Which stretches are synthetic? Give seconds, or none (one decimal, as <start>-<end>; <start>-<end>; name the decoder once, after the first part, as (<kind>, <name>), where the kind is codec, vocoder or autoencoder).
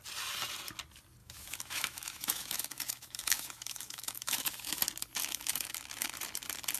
1.2-4.8 (autoencoder, DAC-VAE); 5.2-6.1